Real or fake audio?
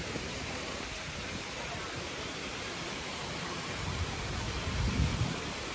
fake